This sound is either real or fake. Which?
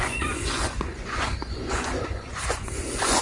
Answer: fake